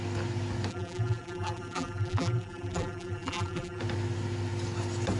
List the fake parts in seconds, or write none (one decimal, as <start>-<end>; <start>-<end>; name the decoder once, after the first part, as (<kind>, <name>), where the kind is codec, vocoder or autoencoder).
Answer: 0.7-3.8 (vocoder, BigVGAN v2)